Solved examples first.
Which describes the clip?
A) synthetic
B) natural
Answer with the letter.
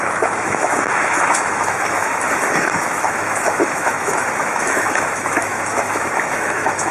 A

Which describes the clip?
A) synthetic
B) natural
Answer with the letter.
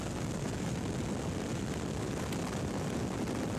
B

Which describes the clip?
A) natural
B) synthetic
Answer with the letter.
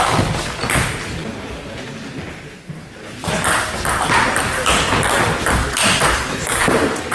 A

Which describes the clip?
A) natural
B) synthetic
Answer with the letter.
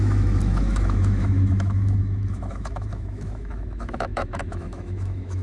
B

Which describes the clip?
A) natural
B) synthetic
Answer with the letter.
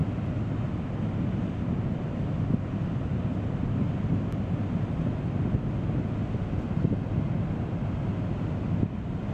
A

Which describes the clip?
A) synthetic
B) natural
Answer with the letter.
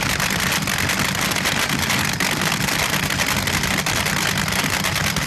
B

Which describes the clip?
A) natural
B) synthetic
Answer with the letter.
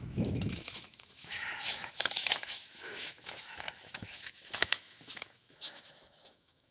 B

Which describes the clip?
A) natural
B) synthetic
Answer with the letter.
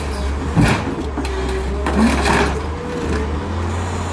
A